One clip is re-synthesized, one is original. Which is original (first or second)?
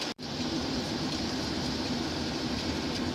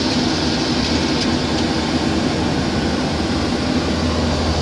second